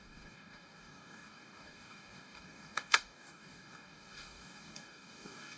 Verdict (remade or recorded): remade